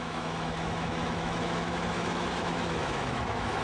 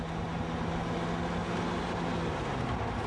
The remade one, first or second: first